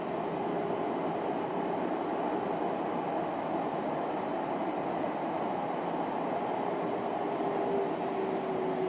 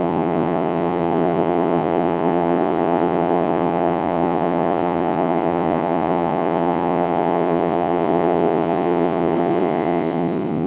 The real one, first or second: first